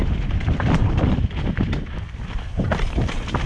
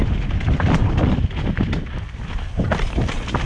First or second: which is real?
second